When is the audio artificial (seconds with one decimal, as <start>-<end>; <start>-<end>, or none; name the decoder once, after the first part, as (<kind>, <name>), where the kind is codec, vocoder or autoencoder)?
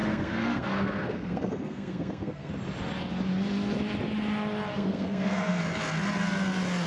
0.0-2.5 (codec, SNAC); 4.7-5.6